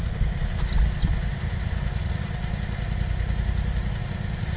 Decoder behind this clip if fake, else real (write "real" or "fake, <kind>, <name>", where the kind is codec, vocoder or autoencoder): real